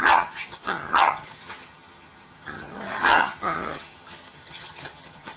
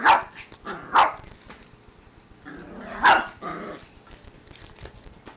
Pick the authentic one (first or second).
second